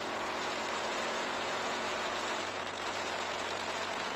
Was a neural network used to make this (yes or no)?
yes